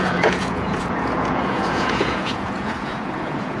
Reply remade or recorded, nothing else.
remade